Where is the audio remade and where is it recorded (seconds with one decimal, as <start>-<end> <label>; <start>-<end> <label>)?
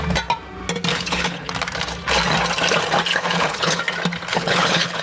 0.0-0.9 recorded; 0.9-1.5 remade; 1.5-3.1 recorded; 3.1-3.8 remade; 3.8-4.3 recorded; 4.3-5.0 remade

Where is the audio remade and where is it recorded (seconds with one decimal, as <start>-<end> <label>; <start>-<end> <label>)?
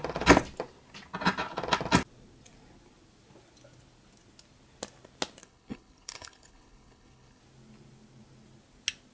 0.0-5.4 recorded; 5.4-7.4 remade; 7.4-9.1 recorded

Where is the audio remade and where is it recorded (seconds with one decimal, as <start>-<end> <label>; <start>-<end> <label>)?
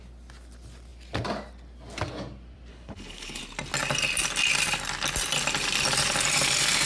0.0-2.7 recorded; 2.7-3.4 remade; 3.4-6.9 recorded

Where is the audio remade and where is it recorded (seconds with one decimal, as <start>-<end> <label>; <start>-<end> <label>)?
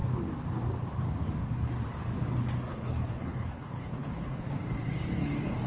0.0-2.7 recorded; 2.7-4.6 remade; 4.6-5.7 recorded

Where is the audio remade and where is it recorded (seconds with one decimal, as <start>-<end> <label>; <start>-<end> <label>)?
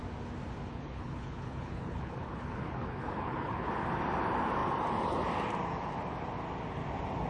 0.0-0.7 recorded; 0.7-3.7 remade; 3.7-7.3 recorded